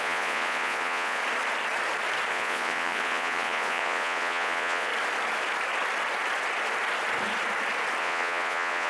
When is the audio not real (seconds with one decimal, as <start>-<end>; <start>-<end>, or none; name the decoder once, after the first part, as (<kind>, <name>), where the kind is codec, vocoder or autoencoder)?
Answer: 0.0-1.2 (vocoder, Vocos); 2.3-4.9; 8.0-8.9